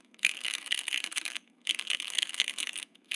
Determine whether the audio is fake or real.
fake